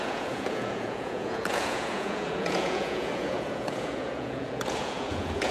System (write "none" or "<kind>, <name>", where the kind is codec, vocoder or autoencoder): vocoder, Vocos